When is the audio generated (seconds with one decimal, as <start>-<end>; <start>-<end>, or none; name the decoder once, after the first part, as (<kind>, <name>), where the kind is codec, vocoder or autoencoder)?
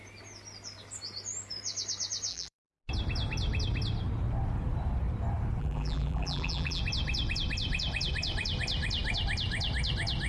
2.3-2.8 (vocoder, BigVGAN v2); 5.6-6.8